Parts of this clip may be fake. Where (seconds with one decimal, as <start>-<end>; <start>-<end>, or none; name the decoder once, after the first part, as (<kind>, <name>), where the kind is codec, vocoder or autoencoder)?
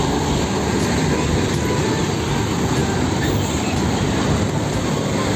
2.8-4.4 (vocoder, BigVGAN v2)